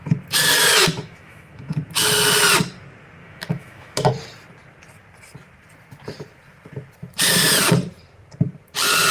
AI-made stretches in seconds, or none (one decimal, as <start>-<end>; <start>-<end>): 0.8-1.7; 3.2-4.1